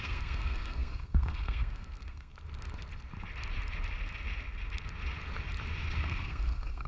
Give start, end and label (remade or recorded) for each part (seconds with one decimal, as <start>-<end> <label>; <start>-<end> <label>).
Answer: 0.0-2.3 remade; 2.3-6.0 recorded; 6.0-6.9 remade